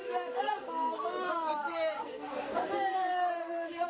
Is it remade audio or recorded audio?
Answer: remade